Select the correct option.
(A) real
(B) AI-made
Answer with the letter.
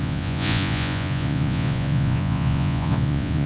B